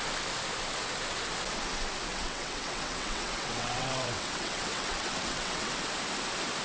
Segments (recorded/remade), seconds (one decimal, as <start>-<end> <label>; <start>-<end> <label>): 0.0-2.1 recorded; 2.1-5.7 remade; 5.7-6.6 recorded